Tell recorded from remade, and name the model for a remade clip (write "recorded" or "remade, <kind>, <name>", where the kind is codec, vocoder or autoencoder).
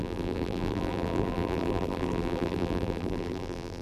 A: remade, vocoder, BigVGAN v2